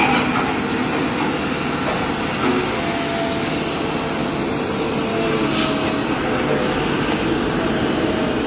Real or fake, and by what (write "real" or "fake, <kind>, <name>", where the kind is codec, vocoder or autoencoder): real